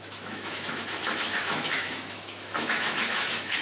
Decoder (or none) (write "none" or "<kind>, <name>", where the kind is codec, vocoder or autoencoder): autoencoder, DAC-VAE